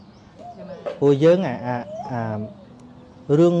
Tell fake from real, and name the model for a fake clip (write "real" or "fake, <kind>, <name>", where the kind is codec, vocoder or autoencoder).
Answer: real